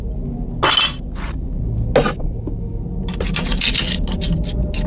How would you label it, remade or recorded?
recorded